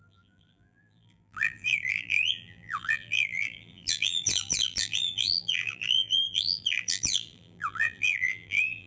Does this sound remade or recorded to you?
remade